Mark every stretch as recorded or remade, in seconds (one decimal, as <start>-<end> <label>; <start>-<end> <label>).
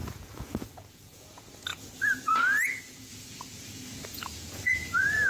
0.0-5.3 remade